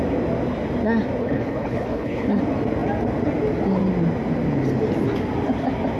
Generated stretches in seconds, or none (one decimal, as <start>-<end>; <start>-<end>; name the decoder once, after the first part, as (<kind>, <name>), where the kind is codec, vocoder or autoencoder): 1.2-2.4 (codec, HILCodec)